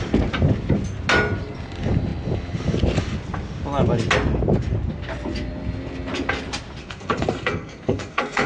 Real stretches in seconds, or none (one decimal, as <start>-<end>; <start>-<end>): 0.0-6.8